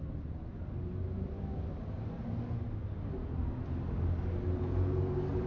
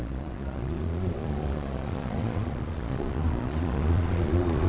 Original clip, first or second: first